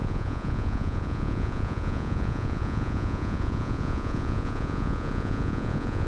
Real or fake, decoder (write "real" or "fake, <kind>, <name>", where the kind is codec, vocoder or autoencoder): fake, vocoder, Vocos